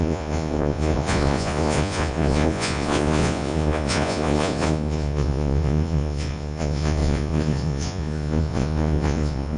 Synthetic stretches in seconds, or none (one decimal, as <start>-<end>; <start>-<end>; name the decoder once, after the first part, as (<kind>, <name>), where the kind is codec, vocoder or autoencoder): 0.0-9.6 (vocoder, Vocos)